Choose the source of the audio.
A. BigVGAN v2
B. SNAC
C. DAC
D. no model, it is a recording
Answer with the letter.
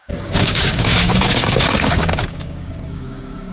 C